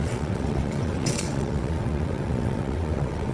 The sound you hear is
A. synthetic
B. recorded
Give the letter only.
A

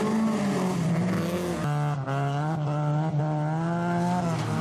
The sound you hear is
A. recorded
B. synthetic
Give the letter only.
A